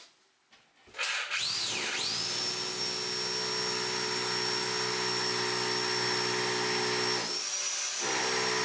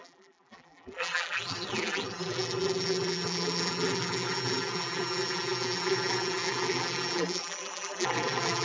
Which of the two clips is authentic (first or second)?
first